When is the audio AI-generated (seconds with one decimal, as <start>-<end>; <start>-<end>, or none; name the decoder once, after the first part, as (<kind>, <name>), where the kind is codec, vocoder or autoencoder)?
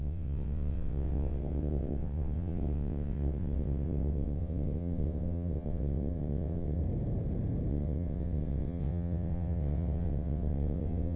0.0-6.8 (vocoder, WaveNeXt); 7.7-11.2